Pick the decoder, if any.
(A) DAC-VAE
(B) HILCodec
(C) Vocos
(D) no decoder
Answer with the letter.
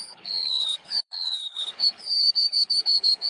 B